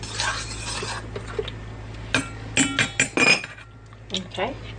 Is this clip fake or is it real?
real